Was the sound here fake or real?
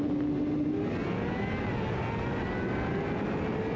real